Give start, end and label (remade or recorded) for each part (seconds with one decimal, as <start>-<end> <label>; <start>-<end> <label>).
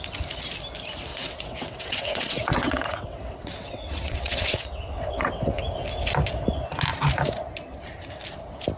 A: 0.0-1.1 recorded; 1.1-5.6 remade; 5.6-8.8 recorded